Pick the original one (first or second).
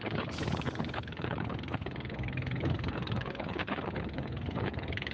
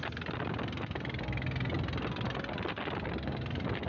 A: second